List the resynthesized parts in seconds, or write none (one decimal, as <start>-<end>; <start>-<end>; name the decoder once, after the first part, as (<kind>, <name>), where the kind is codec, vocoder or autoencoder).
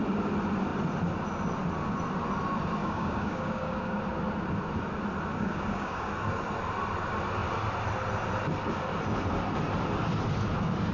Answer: 2.8-4.0 (codec, DAC); 5.3-6.1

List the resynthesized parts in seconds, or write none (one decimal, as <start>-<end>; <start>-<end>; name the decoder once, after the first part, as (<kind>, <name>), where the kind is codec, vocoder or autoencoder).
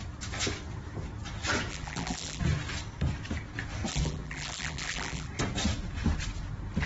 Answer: 1.7-2.4 (vocoder, BigVGAN v2); 3.9-5.3